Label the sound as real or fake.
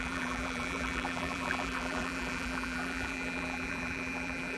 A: fake